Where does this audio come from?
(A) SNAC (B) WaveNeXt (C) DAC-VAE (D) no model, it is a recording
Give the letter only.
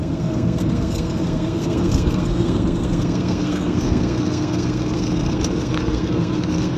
A